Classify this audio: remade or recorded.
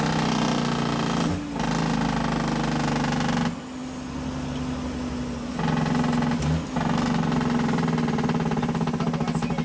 recorded